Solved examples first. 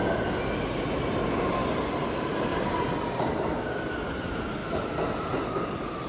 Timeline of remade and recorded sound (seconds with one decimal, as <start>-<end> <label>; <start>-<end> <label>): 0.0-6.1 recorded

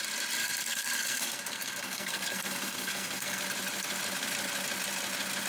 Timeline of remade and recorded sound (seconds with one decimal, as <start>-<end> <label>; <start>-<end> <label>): 0.0-0.4 recorded; 0.4-3.4 remade; 3.4-5.5 recorded

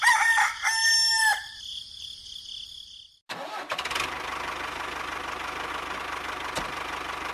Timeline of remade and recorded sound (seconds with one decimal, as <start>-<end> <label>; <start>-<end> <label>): 0.0-7.3 recorded

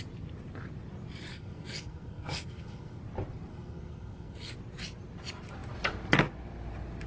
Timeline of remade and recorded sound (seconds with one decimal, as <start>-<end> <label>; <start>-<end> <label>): 0.0-1.3 recorded; 1.3-3.0 remade; 3.0-3.5 recorded; 3.5-4.5 remade; 4.5-7.1 recorded

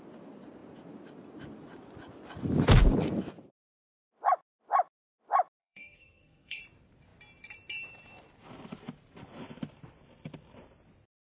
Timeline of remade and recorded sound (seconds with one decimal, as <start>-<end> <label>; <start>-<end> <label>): 0.0-5.6 recorded; 5.6-6.6 remade; 6.6-11.3 recorded

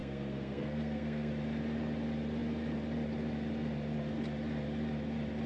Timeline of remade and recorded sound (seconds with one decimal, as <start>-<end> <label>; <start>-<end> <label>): 0.0-1.3 remade; 1.3-5.5 recorded